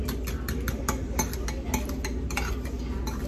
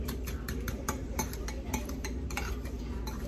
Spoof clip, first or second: second